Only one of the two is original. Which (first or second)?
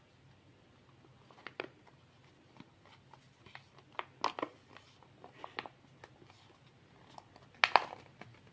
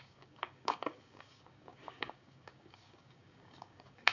first